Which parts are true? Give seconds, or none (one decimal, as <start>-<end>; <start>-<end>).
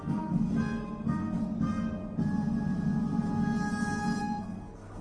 1.4-4.2